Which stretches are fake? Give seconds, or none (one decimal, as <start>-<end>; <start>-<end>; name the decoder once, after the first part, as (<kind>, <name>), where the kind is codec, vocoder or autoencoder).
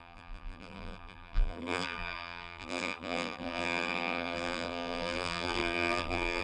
0.0-6.4 (vocoder, BigVGAN v2)